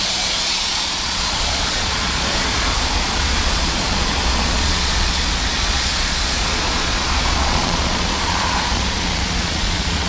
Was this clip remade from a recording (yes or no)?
yes